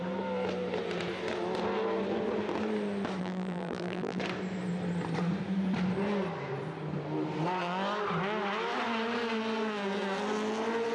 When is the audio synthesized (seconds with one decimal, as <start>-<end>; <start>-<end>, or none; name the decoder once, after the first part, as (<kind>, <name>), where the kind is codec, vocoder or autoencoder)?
3.2-4.2 (vocoder, BigVGAN v2)